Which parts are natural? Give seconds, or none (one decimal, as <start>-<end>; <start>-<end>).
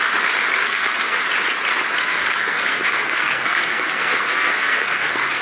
0.0-0.6; 1.2-2.0